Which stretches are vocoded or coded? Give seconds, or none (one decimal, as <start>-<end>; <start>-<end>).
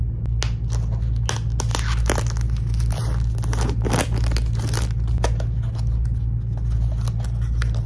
none